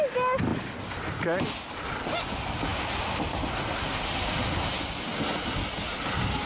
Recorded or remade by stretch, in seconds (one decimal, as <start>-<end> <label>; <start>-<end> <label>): 0.0-6.5 recorded